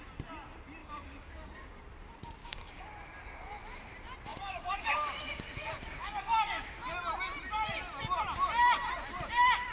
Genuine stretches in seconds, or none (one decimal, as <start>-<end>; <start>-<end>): 0.0-0.8; 1.8-2.4; 2.9-4.3; 6.8-9.7